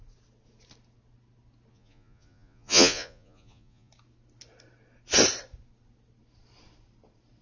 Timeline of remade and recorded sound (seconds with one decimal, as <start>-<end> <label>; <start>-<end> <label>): 0.0-1.7 recorded; 1.7-3.9 remade; 3.9-7.4 recorded